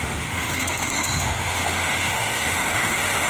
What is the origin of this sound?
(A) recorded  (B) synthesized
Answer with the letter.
B